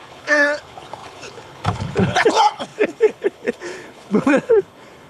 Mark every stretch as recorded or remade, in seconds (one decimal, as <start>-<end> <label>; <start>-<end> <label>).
0.0-5.1 remade